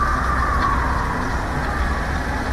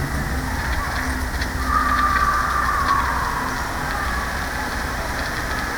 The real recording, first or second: second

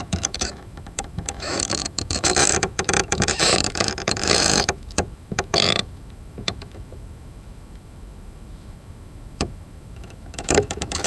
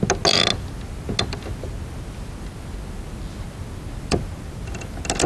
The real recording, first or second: second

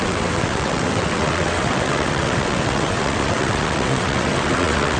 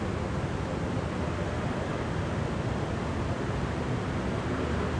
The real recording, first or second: second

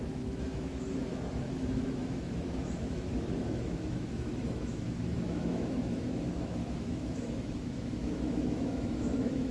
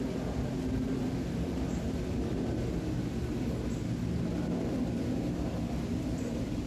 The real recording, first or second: second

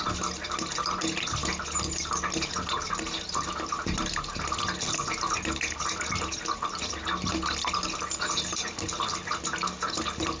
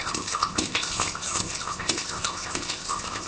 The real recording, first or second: first